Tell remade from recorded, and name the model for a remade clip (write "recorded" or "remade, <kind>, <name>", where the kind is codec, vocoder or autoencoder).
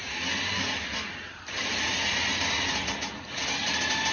recorded